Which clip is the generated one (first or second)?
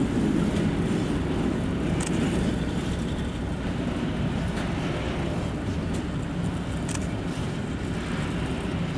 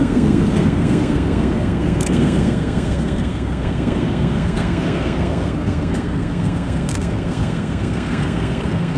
second